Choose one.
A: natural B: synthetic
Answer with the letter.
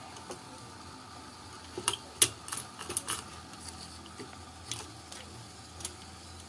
A